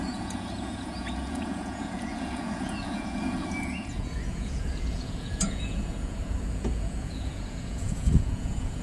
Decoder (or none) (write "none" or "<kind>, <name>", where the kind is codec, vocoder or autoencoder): vocoder, Vocos